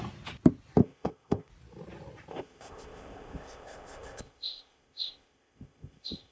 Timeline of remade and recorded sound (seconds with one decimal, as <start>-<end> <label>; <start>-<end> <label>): 0.0-0.8 recorded; 0.8-1.5 remade; 1.5-2.3 recorded; 2.3-6.3 remade

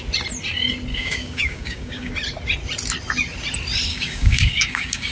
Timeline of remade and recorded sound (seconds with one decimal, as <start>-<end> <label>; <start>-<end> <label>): 0.0-0.9 recorded; 0.9-2.1 remade; 2.1-3.9 recorded; 3.9-5.1 remade

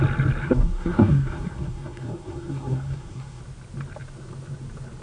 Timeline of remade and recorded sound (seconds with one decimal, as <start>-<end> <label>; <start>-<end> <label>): 0.0-0.4 recorded; 0.4-3.4 remade; 3.4-5.0 recorded

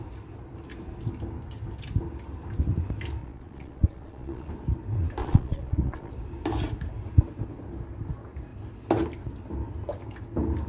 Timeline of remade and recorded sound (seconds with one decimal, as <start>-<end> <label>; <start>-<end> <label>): 0.0-3.2 recorded; 3.2-4.5 remade; 4.5-5.2 recorded; 5.2-6.1 remade; 6.1-10.7 recorded

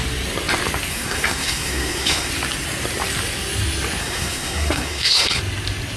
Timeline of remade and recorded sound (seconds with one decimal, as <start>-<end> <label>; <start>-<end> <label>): 0.0-0.9 recorded; 0.9-2.3 remade; 2.3-4.0 recorded; 4.0-5.4 remade; 5.4-6.0 recorded

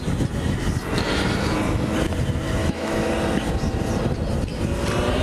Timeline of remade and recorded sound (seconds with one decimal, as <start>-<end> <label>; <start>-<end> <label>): 0.0-2.6 recorded; 2.6-3.1 remade; 3.1-5.2 recorded

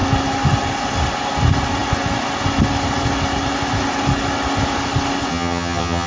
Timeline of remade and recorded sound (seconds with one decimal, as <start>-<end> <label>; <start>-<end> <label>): 0.0-5.3 recorded; 5.3-6.1 remade